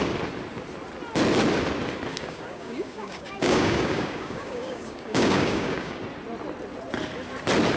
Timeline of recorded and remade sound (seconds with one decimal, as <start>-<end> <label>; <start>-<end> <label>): 0.0-2.1 recorded; 2.1-6.0 remade; 6.0-7.8 recorded